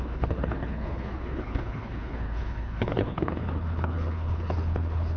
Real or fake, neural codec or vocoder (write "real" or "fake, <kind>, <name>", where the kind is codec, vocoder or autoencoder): fake, codec, HILCodec